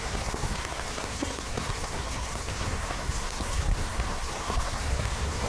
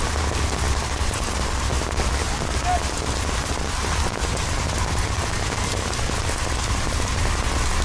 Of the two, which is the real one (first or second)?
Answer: second